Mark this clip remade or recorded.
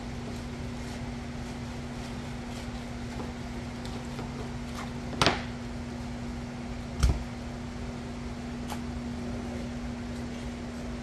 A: recorded